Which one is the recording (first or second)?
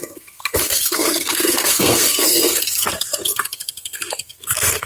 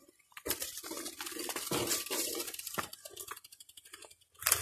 second